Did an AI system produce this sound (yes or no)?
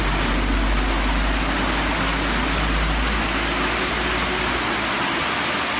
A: no